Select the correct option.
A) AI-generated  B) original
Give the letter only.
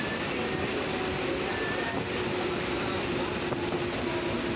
B